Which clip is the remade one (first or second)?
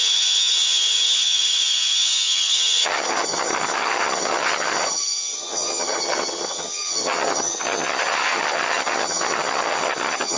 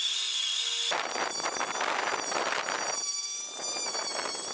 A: first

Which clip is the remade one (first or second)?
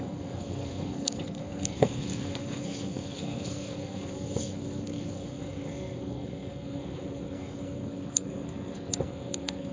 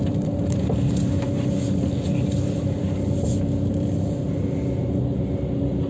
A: first